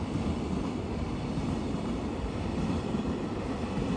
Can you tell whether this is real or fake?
fake